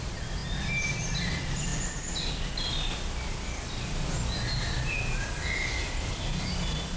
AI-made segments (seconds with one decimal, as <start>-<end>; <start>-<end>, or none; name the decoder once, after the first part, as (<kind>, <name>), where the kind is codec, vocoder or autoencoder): 0.0-0.4 (vocoder, BigVGAN v2); 1.2-1.7; 5.9-7.0